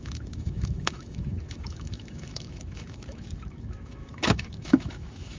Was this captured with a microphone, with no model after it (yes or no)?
no